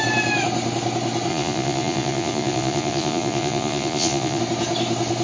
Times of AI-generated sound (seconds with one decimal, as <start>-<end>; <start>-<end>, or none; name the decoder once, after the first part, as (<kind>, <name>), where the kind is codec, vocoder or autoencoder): 1.3-4.4 (vocoder, Vocos)